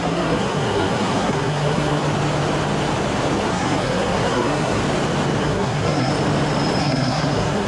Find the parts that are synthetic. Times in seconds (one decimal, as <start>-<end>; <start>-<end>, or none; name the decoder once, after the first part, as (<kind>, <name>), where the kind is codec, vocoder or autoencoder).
0.0-2.0 (codec, SNAC); 3.5-4.8; 5.4-6.1; 6.8-7.7